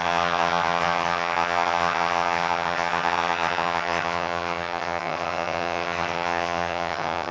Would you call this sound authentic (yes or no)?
no